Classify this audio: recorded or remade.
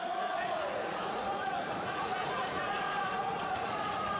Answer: remade